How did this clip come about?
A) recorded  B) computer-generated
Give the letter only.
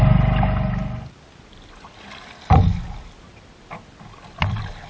A